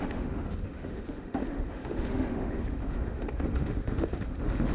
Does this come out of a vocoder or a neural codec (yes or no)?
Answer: yes